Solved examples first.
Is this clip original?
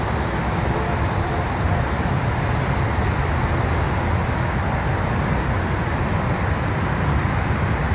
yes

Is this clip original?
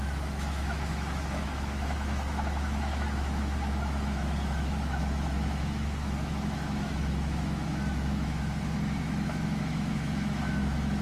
no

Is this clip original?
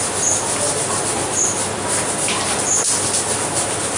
yes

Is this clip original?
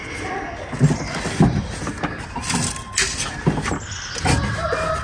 yes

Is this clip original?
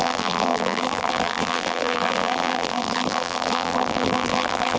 no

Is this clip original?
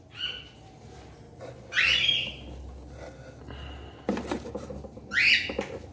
yes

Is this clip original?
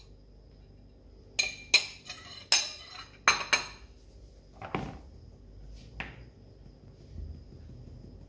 yes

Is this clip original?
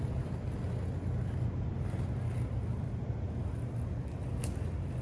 yes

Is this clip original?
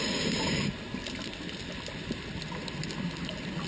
yes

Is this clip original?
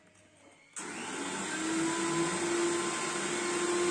yes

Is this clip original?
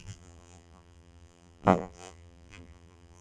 no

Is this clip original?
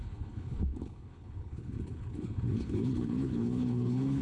no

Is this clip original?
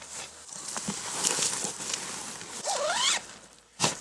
yes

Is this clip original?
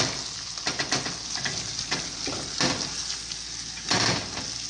yes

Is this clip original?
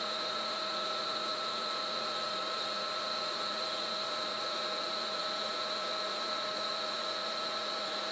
no